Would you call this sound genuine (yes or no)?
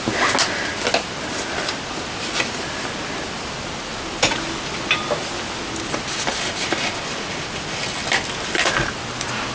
yes